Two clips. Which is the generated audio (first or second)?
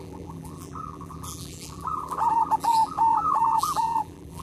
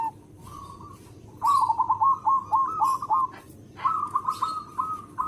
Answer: first